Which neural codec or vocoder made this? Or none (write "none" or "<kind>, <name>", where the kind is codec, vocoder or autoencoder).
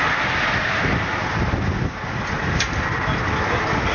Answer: none